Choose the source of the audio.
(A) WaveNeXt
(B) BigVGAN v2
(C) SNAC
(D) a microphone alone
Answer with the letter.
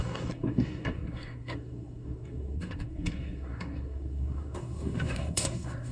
C